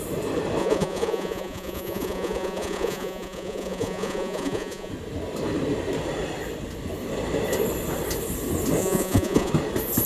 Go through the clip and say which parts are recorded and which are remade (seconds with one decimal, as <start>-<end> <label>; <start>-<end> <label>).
0.0-0.6 recorded; 0.6-4.9 remade; 4.9-8.8 recorded; 8.8-9.5 remade; 9.5-10.1 recorded